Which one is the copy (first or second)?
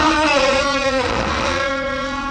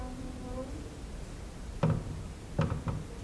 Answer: first